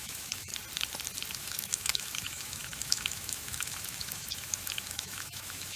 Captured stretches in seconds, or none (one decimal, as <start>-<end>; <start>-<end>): 0.5-1.3